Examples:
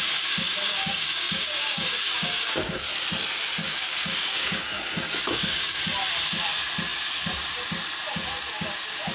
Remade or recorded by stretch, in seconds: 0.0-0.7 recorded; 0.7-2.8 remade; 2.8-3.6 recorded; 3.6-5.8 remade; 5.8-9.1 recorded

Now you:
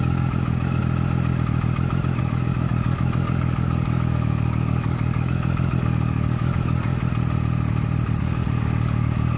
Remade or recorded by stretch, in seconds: 0.0-0.8 remade; 0.8-2.2 recorded; 2.2-6.9 remade; 6.9-8.2 recorded; 8.2-9.4 remade

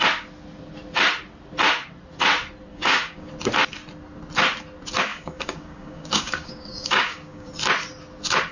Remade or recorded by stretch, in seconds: 0.0-2.7 recorded; 2.7-3.3 remade; 3.3-5.1 recorded; 5.1-7.5 remade; 7.5-8.5 recorded

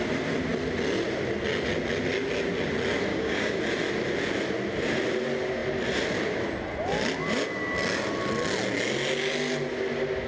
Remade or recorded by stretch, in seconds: 0.0-3.1 recorded; 3.1-3.6 remade; 3.6-10.3 recorded

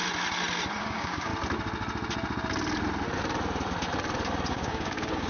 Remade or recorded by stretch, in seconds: 0.0-0.8 recorded; 0.8-1.3 remade; 1.3-4.5 recorded; 4.5-5.3 remade

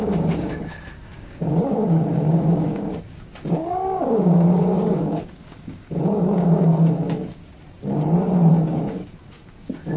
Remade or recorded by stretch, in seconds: 0.0-7.4 remade; 7.4-8.5 recorded; 8.5-10.0 remade